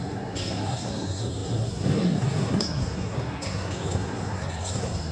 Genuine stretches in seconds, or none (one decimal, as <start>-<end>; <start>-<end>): none

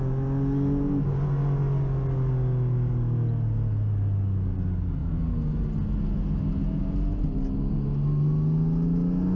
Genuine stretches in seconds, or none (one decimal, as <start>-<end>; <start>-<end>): 0.0-9.3